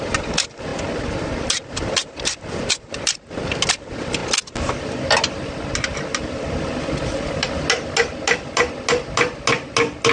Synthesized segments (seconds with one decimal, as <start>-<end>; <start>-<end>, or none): none